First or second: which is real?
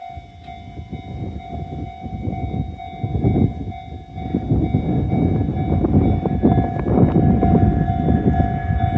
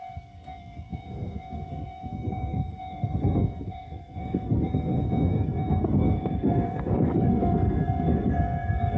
first